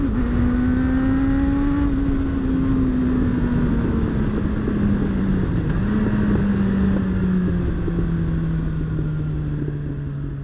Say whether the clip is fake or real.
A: real